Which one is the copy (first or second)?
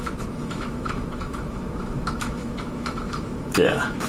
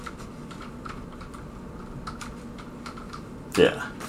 first